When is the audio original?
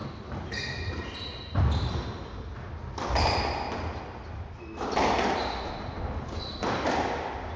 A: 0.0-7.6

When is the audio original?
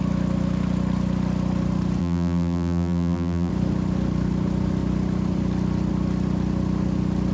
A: 0.0-2.0; 3.5-7.3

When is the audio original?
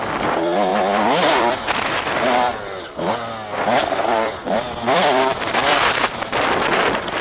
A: 0.7-1.4; 2.5-3.8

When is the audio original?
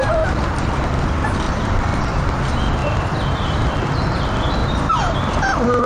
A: 0.0-5.9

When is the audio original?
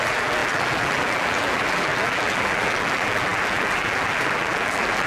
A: none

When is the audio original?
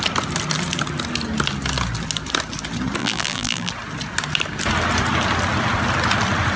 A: 0.0-3.0; 3.7-6.6